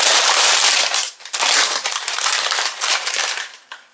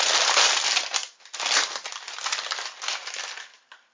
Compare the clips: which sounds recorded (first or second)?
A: second